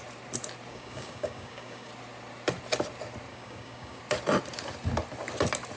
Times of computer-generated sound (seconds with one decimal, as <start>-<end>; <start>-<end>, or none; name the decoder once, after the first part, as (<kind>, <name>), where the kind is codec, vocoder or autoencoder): 0.7-1.9 (codec, DAC); 3.3-4.0